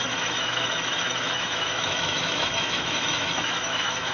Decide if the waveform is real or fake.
fake